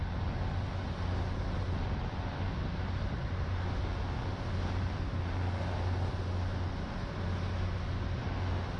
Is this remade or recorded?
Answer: recorded